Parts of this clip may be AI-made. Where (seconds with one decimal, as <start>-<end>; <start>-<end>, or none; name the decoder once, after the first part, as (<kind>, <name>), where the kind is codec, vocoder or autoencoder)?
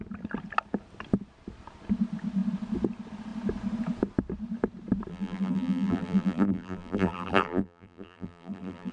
5.1-8.9 (vocoder, BigVGAN v2)